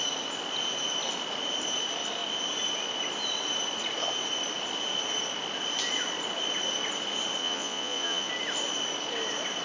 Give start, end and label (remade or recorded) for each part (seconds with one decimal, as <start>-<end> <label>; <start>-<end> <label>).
0.0-7.4 recorded; 7.4-8.3 remade; 8.3-9.6 recorded